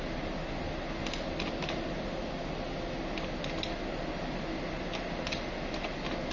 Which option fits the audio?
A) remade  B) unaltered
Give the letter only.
B